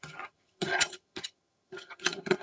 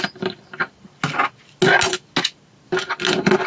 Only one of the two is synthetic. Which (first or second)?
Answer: first